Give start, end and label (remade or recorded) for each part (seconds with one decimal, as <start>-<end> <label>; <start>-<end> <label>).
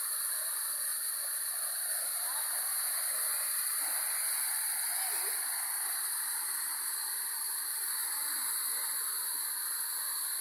0.0-10.4 recorded